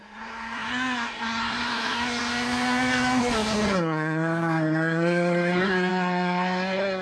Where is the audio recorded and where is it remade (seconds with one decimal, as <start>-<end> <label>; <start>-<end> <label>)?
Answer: 0.0-7.0 remade